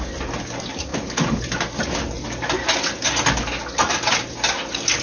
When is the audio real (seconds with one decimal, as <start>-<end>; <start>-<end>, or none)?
0.0-5.0